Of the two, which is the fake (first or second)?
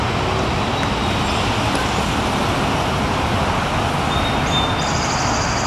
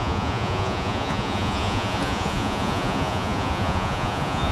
second